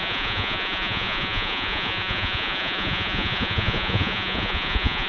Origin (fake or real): fake